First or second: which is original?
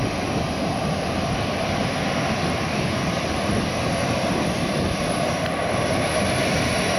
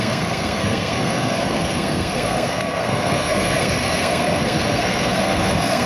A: first